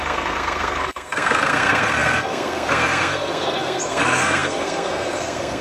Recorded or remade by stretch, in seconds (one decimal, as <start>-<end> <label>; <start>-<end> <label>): 0.0-5.6 remade